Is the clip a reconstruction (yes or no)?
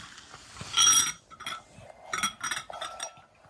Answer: no